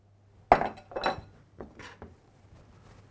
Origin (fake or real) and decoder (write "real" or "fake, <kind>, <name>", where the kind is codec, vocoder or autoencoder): real